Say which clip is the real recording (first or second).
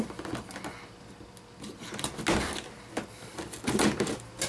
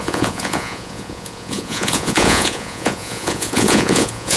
first